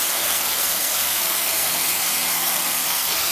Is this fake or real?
fake